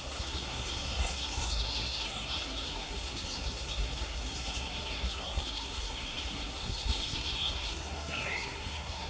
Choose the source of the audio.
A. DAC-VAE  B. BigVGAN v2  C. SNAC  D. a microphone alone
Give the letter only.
C